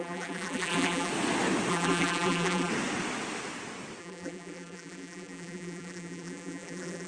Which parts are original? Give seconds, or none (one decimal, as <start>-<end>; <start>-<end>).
1.1-1.7; 2.7-4.0